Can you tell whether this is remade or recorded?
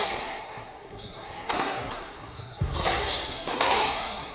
remade